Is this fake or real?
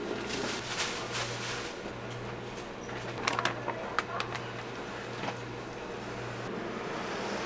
real